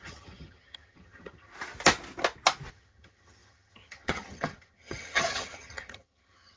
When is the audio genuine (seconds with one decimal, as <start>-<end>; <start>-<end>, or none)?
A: 1.5-2.7